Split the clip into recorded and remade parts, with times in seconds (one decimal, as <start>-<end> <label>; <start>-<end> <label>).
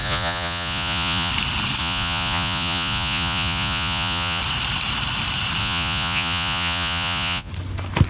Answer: 0.0-1.3 remade; 1.3-1.8 recorded; 1.8-4.4 remade; 4.4-5.6 recorded; 5.6-7.5 remade; 7.5-8.1 recorded